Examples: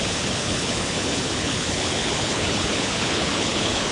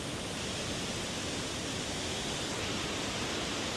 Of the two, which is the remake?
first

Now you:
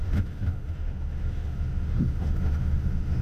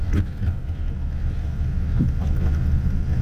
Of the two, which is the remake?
first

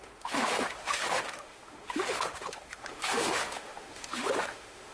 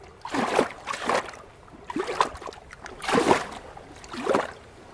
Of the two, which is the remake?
first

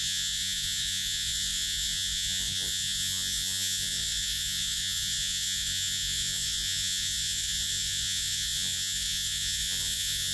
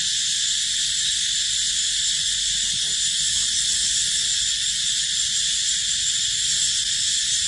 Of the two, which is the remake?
first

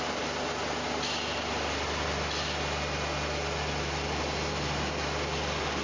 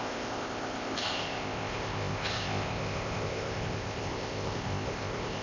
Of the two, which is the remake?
second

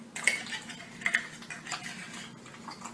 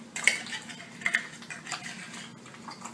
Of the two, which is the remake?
second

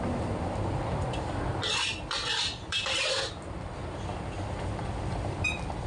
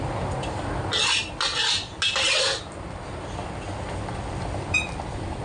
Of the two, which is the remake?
first